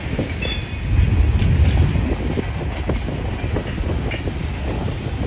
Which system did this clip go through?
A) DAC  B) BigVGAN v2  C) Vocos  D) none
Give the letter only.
D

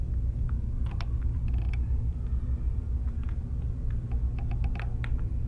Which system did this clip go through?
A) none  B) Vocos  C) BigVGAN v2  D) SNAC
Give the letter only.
A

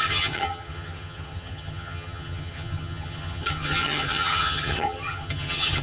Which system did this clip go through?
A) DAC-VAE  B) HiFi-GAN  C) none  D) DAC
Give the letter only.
B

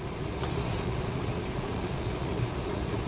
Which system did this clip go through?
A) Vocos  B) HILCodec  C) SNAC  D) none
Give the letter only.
A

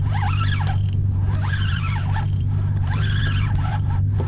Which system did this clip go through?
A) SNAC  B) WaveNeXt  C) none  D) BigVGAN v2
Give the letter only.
D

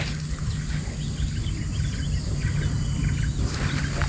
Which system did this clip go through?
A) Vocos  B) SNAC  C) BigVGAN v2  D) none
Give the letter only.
D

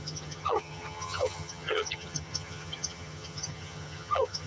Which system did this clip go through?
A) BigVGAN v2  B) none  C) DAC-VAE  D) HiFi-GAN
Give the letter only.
D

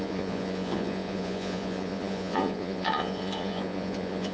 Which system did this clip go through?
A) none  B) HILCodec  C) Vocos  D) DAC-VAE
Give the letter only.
C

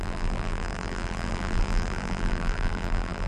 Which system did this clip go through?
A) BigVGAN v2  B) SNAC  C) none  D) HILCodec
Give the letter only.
A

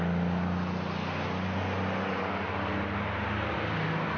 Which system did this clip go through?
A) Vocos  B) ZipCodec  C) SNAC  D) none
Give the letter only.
D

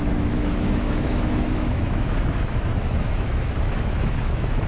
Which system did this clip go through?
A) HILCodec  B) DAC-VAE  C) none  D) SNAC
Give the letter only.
B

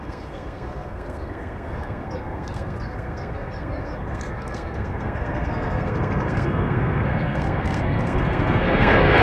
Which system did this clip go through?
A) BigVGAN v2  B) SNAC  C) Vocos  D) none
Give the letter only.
B